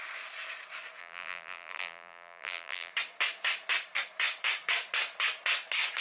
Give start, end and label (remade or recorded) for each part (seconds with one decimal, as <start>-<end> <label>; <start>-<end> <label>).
0.0-1.0 recorded; 1.0-2.9 remade; 2.9-6.0 recorded